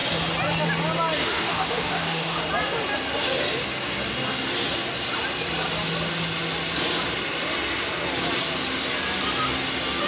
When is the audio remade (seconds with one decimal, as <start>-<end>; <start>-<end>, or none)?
1.2-2.4